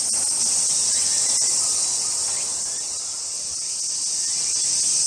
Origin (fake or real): real